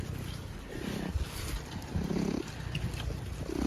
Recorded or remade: recorded